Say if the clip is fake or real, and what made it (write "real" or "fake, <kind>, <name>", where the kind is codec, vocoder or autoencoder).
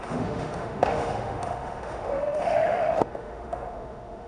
fake, autoencoder, DAC-VAE